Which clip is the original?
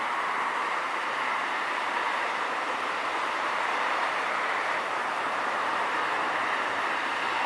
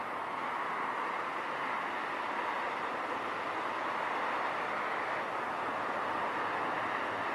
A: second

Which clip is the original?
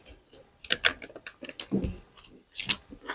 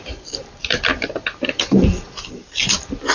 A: first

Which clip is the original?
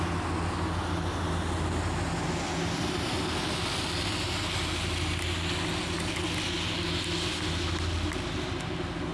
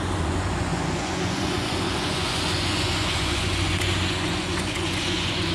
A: first